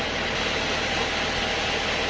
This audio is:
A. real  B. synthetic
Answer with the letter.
A